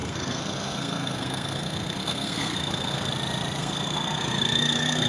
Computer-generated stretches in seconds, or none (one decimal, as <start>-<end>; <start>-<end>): 0.0-3.1; 3.6-5.1